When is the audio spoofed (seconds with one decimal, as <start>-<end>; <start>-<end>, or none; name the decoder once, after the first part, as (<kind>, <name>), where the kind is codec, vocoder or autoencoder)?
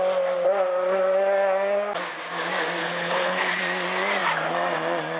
2.8-3.6 (codec, HILCodec)